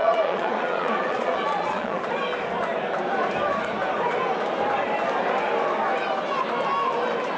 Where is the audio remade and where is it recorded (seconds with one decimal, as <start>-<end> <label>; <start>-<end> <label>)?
0.0-2.0 remade; 2.0-7.4 recorded